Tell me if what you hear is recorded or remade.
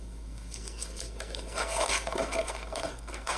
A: remade